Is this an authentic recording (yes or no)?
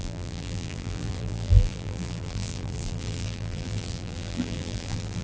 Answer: no